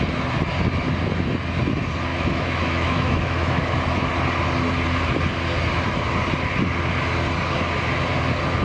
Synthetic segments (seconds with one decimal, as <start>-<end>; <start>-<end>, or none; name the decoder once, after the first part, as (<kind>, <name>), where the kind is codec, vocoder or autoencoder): 2.1-3.6 (autoencoder, DAC-VAE)

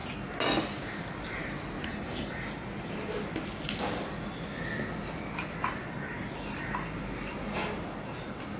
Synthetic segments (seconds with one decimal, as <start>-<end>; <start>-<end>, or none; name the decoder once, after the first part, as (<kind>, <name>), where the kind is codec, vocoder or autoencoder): none

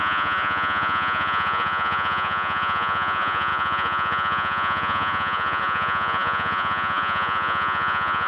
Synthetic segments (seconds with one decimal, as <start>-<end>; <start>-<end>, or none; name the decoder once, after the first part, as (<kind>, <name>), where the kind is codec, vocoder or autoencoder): 0.0-8.3 (vocoder, Vocos)

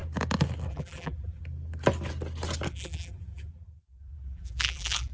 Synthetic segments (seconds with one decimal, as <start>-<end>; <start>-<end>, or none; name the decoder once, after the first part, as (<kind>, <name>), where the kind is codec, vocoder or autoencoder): 0.7-1.4 (vocoder, BigVGAN v2); 2.7-5.1